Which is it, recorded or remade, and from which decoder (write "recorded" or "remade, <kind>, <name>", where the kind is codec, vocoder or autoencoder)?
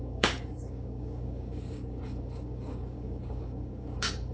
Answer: remade, codec, DAC